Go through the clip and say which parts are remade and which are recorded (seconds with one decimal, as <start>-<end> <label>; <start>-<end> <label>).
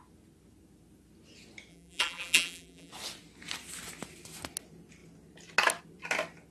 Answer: 0.0-1.7 recorded; 1.7-2.9 remade; 2.9-6.5 recorded